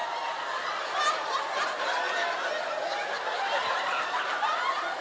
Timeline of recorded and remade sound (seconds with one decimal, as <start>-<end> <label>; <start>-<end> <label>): 0.0-5.0 recorded

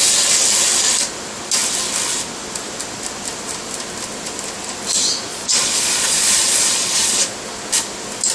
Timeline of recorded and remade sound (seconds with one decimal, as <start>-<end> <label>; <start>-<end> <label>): 0.0-5.3 recorded; 5.3-7.3 remade; 7.3-8.3 recorded

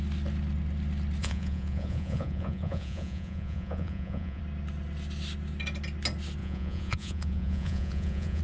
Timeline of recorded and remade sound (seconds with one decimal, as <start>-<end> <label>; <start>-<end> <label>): 0.0-1.2 recorded; 1.2-4.4 remade; 4.4-6.4 recorded; 6.4-8.4 remade

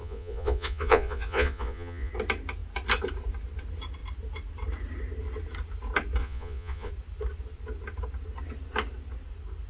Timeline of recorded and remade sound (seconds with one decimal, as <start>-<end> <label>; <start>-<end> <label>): 0.0-2.1 remade; 2.1-6.2 recorded; 6.2-6.9 remade; 6.9-9.7 recorded

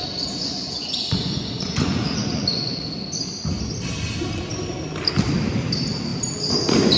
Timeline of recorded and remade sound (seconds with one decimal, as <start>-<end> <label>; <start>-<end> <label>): 0.0-2.8 remade; 2.8-7.0 recorded